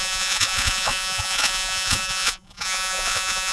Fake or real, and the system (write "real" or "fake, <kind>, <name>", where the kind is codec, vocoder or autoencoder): fake, vocoder, Vocos